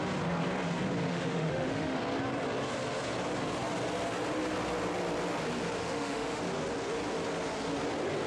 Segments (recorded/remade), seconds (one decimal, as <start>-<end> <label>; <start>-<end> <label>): 0.0-1.1 recorded; 1.1-2.0 remade; 2.0-5.8 recorded; 5.8-6.4 remade; 6.4-8.3 recorded

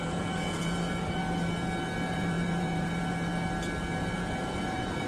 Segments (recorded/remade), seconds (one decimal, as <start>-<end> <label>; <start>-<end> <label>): 0.0-1.2 remade; 1.2-2.1 recorded; 2.1-3.3 remade; 3.3-4.0 recorded; 4.0-5.1 remade

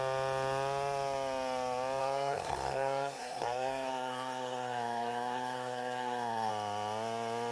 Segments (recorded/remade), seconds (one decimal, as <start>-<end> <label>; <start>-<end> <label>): 0.0-2.0 recorded; 2.0-6.5 remade; 6.5-7.5 recorded

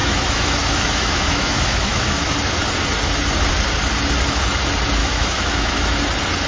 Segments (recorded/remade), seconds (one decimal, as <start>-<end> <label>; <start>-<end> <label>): 0.0-2.3 remade; 2.3-5.0 recorded; 5.0-5.9 remade; 5.9-6.5 recorded

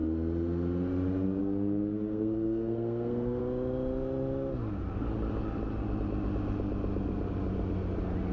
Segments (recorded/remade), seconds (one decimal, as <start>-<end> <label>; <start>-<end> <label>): 0.0-1.4 recorded; 1.4-3.4 remade; 3.4-8.3 recorded

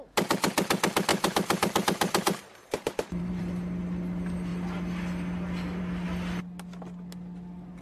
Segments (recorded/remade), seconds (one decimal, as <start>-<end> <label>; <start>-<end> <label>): 0.0-1.1 recorded; 1.1-3.4 remade; 3.4-7.8 recorded